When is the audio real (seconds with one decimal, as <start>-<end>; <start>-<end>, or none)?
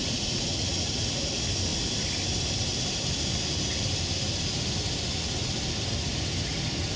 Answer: 1.2-7.0